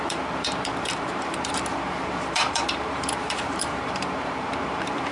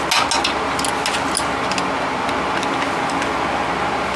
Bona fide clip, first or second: second